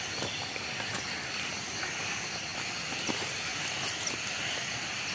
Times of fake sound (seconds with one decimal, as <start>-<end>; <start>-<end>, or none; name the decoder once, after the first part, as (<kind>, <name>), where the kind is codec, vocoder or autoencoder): none